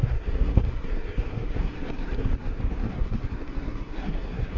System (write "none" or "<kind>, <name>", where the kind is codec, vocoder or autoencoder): codec, SNAC